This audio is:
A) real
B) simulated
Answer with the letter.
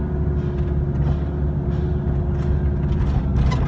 A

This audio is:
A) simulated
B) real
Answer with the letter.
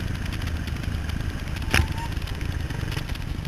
B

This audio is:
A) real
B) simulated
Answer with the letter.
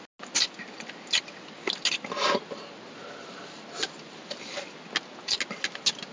A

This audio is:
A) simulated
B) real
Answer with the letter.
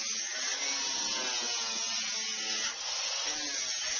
B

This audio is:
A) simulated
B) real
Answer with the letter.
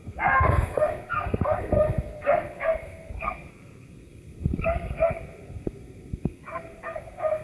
A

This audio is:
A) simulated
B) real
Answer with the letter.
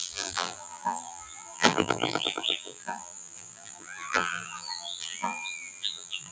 A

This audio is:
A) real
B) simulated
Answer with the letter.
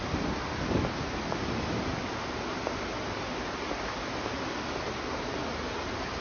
A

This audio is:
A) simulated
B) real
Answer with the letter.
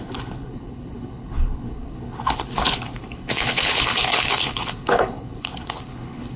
A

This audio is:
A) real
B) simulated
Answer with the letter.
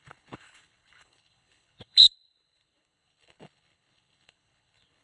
B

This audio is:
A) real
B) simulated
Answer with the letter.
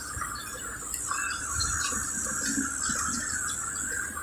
A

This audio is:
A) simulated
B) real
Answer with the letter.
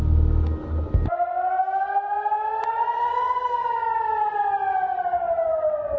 B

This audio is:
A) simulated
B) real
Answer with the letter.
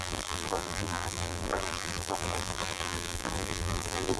A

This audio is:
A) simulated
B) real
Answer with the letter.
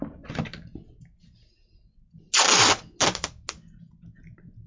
B